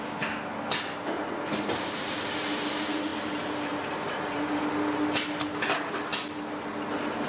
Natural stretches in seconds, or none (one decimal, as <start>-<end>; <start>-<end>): 0.0-7.3